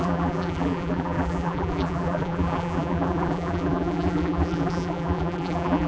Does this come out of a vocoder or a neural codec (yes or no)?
yes